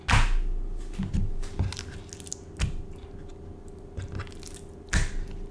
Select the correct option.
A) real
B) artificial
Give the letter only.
A